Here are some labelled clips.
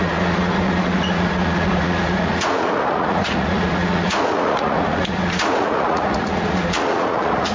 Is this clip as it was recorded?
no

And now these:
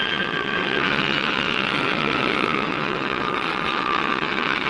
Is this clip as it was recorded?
no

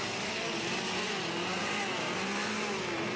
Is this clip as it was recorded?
yes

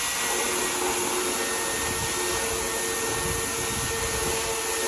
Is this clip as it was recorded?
yes